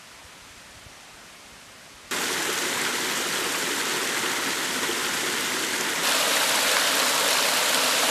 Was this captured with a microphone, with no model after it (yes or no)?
yes